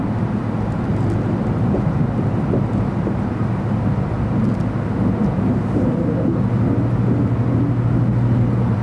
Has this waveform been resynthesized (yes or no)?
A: no